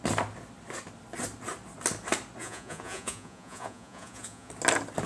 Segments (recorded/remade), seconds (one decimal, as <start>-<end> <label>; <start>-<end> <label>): 0.0-2.4 recorded; 2.4-4.5 remade; 4.5-5.1 recorded